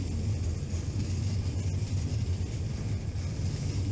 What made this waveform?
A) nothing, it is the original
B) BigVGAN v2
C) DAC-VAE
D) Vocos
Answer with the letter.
A